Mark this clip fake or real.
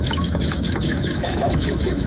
fake